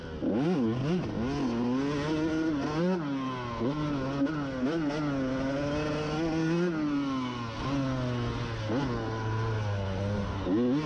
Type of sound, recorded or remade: recorded